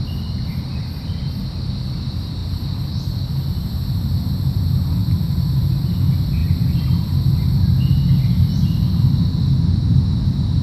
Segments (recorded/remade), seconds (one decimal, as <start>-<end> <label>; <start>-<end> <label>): 0.0-0.7 recorded; 0.7-1.4 remade; 1.4-5.0 recorded; 5.0-5.6 remade; 5.6-10.6 recorded